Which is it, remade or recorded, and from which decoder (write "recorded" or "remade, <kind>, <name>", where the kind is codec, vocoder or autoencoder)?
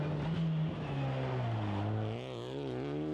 recorded